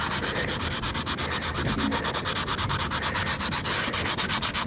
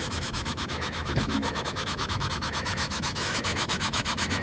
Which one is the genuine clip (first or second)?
first